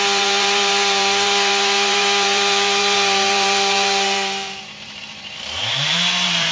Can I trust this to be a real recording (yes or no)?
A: no